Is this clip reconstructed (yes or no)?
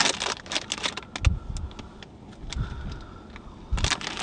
no